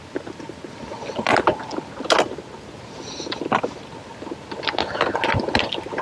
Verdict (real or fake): real